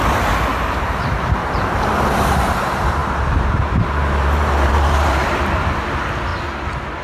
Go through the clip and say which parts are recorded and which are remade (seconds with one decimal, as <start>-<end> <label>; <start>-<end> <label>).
0.0-0.5 recorded; 0.5-1.9 remade; 1.9-3.0 recorded; 3.0-5.5 remade; 5.5-7.0 recorded